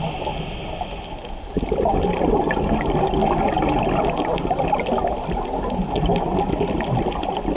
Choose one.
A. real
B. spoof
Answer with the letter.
A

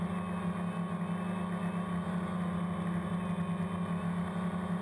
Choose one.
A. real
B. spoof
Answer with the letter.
A